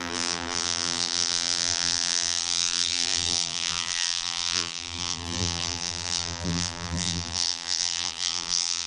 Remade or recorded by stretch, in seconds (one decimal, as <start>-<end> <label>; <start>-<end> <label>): 0.0-8.9 remade